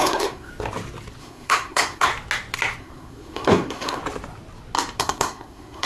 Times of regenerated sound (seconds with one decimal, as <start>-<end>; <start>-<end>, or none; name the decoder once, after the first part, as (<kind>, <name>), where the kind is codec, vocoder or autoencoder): 0.0-0.5 (codec, SNAC); 1.2-2.1; 2.8-4.0; 5.0-5.9